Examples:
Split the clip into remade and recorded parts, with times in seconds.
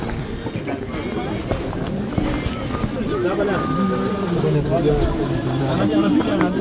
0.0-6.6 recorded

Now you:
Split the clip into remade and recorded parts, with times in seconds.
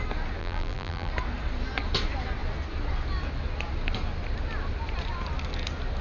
0.0-0.4 recorded; 0.4-1.1 remade; 1.1-6.0 recorded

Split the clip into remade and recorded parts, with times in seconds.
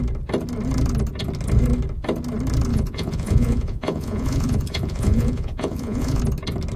0.0-2.7 recorded; 2.7-6.2 remade; 6.2-6.8 recorded